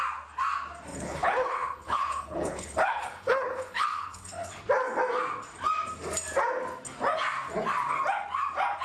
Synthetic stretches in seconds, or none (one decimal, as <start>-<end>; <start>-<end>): 0.9-4.6